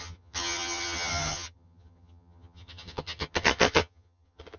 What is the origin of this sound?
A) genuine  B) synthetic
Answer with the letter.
B